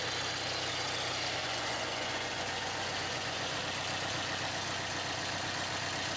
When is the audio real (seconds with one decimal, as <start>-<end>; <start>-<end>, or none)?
0.0-1.4; 3.6-6.2